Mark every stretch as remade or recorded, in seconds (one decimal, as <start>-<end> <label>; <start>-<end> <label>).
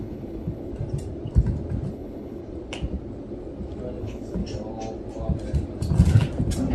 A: 0.0-0.7 remade; 0.7-1.9 recorded; 1.9-2.4 remade; 2.4-4.0 recorded; 4.0-4.4 remade; 4.4-6.7 recorded